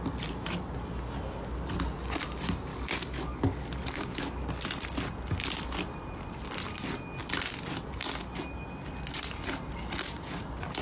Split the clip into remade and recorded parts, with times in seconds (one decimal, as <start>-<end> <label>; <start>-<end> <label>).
0.0-2.7 recorded; 2.7-4.6 remade; 4.6-10.8 recorded